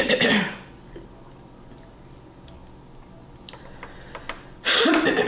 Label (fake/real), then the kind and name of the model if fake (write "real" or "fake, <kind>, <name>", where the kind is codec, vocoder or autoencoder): real